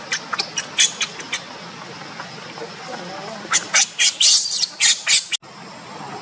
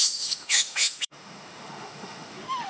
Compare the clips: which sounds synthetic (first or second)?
second